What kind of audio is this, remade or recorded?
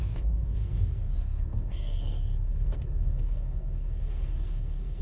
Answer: remade